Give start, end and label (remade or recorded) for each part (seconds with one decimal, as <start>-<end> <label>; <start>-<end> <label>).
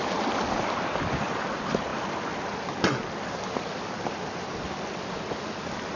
0.0-6.0 recorded